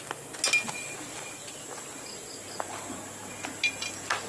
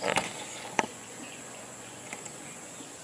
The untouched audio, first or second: first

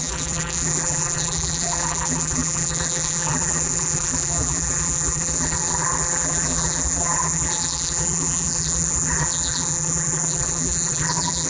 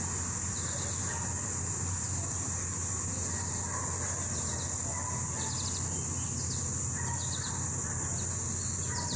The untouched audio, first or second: second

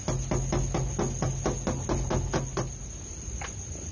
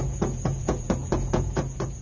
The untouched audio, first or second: first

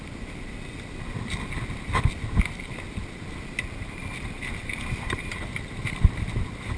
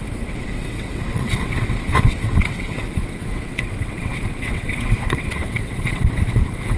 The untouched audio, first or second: first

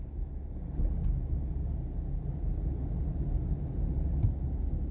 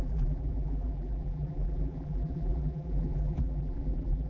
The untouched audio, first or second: first